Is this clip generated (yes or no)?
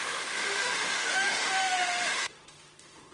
yes